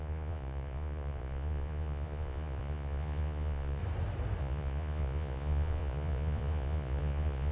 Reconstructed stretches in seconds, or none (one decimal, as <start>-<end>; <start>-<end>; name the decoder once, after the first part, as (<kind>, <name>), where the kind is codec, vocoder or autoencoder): 0.0-3.8 (vocoder, Vocos); 4.4-7.5